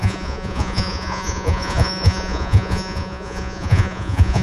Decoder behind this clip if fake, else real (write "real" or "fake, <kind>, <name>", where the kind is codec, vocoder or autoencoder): fake, vocoder, Vocos